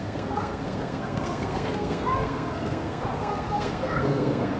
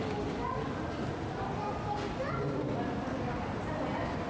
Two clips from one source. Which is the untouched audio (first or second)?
second